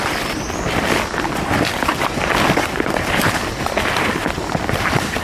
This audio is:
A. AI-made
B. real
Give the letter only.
B